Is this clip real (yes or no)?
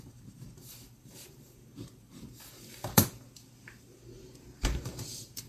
no